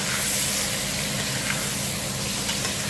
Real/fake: real